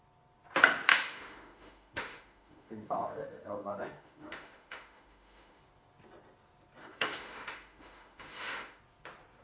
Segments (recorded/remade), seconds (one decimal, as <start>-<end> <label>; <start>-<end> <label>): 0.0-0.9 recorded; 0.9-5.6 remade; 5.6-6.8 recorded; 6.8-8.8 remade; 8.8-9.4 recorded